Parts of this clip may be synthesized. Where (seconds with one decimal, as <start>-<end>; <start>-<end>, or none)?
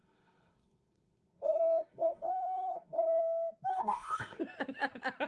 0.0-3.2; 3.7-4.4